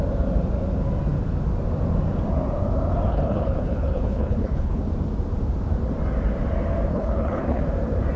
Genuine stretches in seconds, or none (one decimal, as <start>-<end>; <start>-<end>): 0.0-3.1; 4.8-6.9; 7.6-8.2